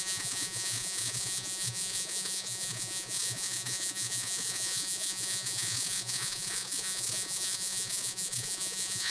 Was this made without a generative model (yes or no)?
no